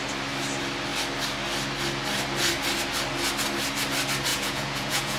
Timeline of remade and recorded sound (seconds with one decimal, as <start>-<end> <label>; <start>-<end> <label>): 0.0-4.3 recorded; 4.3-5.2 remade